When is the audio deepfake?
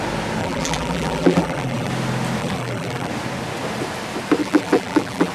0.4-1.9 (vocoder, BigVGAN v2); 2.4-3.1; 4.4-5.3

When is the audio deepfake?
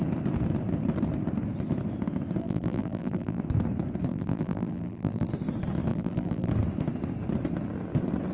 2.4-3.4 (vocoder, BigVGAN v2); 4.1-5.3; 5.9-6.5